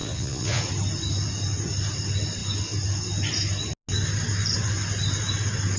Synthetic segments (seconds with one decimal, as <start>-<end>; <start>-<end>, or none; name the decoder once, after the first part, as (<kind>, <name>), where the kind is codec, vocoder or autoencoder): 0.0-0.6 (vocoder, Vocos)